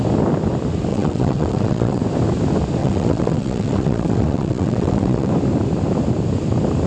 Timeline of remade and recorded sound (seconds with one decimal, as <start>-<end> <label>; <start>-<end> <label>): 0.0-0.9 recorded; 0.9-2.0 remade; 2.0-2.8 recorded; 2.8-5.3 remade; 5.3-6.9 recorded